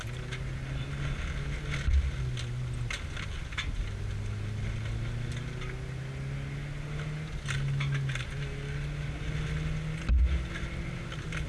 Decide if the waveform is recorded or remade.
recorded